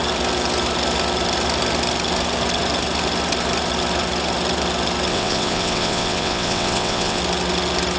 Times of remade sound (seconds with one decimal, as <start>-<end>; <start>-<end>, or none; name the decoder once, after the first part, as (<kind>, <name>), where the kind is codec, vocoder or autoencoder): 5.1-7.2 (vocoder, WaveNeXt)